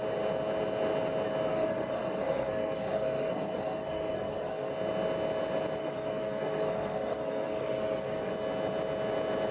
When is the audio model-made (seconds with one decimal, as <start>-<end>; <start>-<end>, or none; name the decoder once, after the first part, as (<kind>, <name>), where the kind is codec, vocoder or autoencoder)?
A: 1.5-4.7 (codec, SNAC); 5.8-8.3